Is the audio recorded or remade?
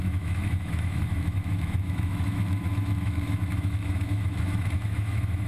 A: remade